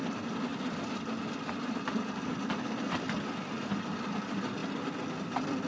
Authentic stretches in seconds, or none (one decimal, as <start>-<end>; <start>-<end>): 0.0-5.7